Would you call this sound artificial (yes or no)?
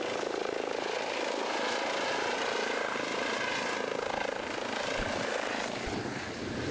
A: yes